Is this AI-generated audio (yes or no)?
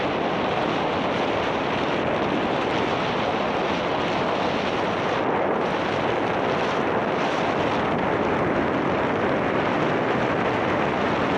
no